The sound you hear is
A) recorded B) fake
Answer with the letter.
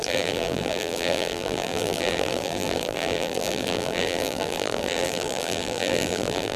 B